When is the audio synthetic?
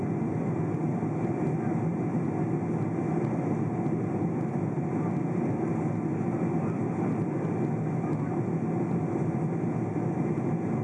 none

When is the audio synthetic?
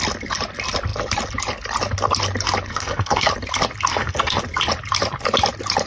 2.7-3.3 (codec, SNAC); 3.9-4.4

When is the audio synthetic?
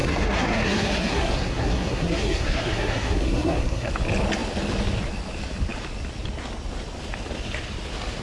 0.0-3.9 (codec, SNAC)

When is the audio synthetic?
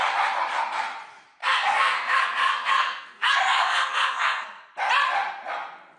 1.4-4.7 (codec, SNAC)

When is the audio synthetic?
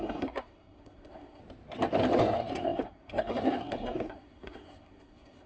0.0-1.4 (codec, SNAC); 2.2-5.5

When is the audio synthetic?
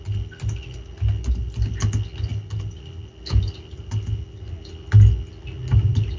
none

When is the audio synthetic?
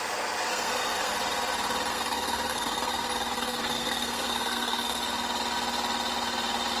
0.5-1.1 (codec, SNAC); 1.9-5.0